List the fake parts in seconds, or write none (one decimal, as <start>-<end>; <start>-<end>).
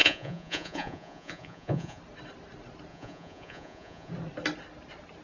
0.0-2.0; 2.9-4.1